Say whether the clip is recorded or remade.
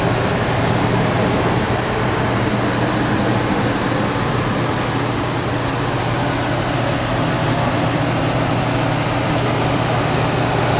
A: recorded